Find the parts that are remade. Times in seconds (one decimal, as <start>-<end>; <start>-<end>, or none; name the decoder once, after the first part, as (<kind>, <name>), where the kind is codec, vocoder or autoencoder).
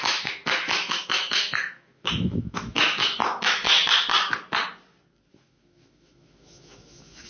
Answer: 0.0-3.6 (autoencoder, DAC-VAE); 5.3-7.3